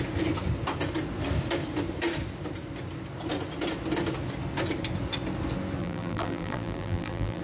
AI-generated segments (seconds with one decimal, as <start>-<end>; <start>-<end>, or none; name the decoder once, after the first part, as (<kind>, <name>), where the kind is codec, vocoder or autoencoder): 5.8-7.4 (vocoder, BigVGAN v2)